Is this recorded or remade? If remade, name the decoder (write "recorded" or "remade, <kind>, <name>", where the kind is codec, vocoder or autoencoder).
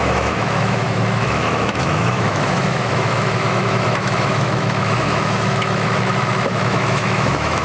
remade, autoencoder, DAC-VAE